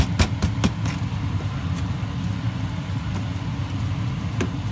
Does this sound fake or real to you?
real